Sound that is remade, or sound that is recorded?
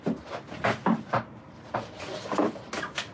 recorded